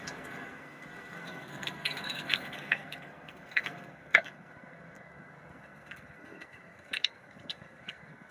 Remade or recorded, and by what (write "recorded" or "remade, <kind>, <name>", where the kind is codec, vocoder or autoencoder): remade, codec, SNAC